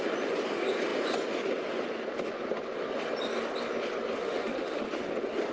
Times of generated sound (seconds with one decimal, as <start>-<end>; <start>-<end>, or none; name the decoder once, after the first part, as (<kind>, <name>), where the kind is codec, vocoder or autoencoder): 4.2-4.9 (autoencoder, DAC-VAE)